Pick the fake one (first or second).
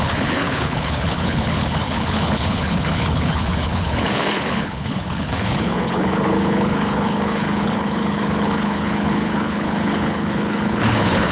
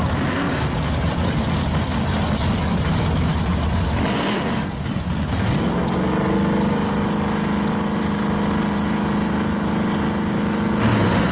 first